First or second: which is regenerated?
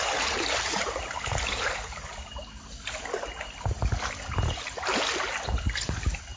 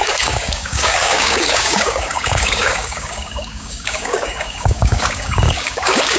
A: second